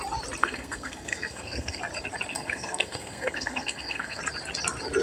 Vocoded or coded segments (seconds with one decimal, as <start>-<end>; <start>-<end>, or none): 0.4-1.8; 2.3-4.2